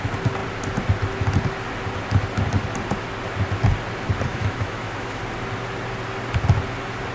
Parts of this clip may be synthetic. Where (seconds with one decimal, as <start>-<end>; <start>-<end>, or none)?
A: 4.3-5.2